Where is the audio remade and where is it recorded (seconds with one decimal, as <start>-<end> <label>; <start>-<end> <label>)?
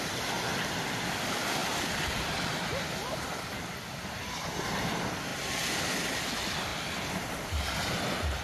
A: 0.0-8.4 recorded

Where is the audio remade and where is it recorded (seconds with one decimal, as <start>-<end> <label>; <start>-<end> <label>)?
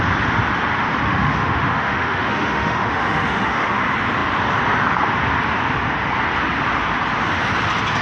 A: 0.0-1.0 recorded; 1.0-3.8 remade; 3.8-8.0 recorded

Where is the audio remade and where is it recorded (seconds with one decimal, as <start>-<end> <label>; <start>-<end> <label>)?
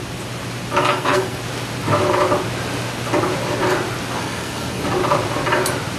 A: 0.0-0.8 recorded; 0.8-1.4 remade; 1.4-4.2 recorded; 4.2-4.8 remade; 4.8-6.0 recorded